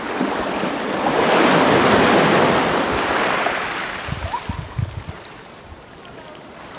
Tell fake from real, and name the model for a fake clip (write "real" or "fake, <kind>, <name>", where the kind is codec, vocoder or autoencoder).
real